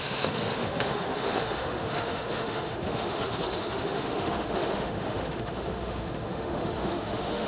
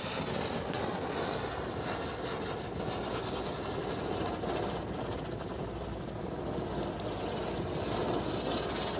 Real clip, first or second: second